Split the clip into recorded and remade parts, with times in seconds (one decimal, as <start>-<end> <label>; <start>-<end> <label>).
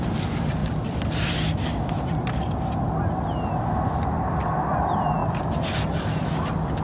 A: 0.0-6.8 recorded